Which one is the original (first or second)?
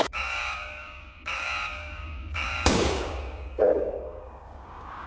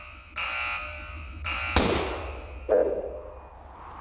second